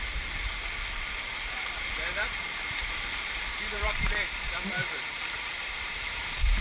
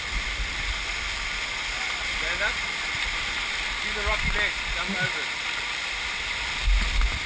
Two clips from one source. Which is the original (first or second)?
second